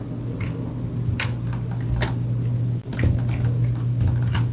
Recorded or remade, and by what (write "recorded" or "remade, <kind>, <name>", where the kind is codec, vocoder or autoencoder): recorded